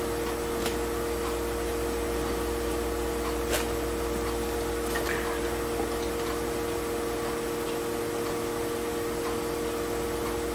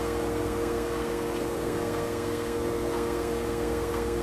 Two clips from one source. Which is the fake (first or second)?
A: second